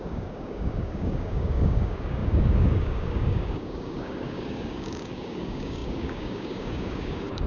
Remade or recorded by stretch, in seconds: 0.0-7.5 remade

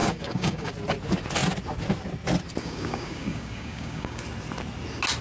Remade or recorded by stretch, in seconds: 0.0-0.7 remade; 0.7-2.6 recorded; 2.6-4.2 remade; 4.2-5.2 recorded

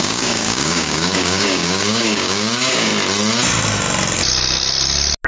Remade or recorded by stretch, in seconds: 0.0-2.9 remade; 2.9-5.3 recorded

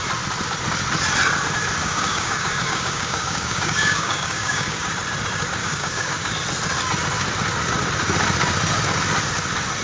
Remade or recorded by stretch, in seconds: 0.0-1.8 recorded; 1.8-4.9 remade; 4.9-5.6 recorded; 5.6-6.3 remade; 6.3-9.8 recorded